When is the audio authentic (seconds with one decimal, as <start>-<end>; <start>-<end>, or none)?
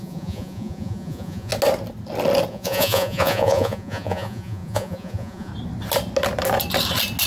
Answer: 1.5-2.5; 5.5-7.3